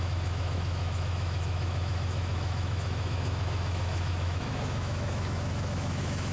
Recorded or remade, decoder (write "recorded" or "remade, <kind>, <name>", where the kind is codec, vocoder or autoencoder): remade, autoencoder, DAC-VAE